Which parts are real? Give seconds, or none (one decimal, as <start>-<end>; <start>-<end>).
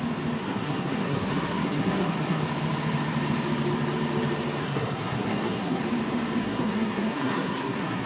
0.0-0.4; 2.4-4.6; 5.8-6.4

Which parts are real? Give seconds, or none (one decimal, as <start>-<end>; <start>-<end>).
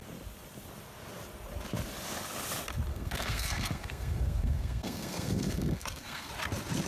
0.0-2.9; 6.3-6.9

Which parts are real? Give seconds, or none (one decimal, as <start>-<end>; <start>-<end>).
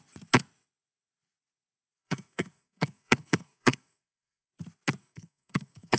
0.0-2.0; 4.5-5.0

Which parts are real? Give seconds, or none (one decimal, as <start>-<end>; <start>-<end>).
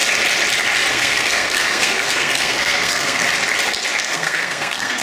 0.0-0.9; 3.2-4.0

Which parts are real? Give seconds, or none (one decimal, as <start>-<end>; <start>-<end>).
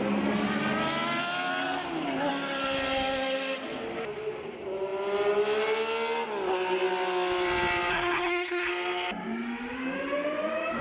0.0-7.9; 8.7-10.8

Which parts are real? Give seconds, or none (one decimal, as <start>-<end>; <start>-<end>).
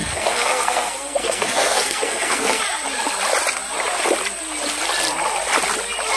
2.6-6.2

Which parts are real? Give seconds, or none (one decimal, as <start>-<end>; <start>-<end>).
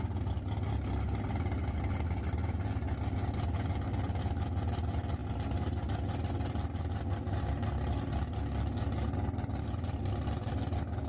0.0-11.1